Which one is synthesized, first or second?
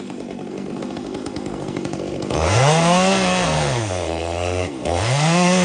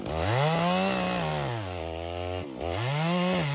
first